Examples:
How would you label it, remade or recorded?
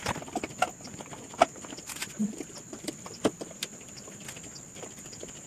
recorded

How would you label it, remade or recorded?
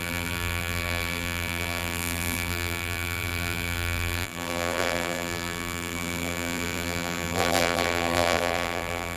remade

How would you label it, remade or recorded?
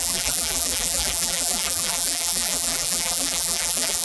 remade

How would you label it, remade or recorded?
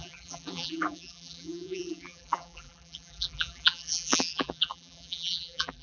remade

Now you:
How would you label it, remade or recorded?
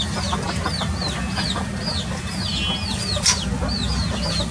recorded